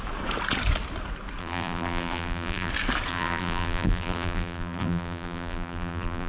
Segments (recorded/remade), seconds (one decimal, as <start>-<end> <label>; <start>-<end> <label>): 0.0-1.4 recorded; 1.4-2.7 remade; 2.7-3.1 recorded; 3.1-6.3 remade

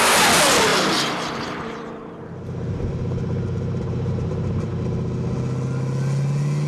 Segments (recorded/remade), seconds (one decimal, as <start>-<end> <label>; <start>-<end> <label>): 0.0-0.7 recorded; 0.7-4.7 remade; 4.7-6.7 recorded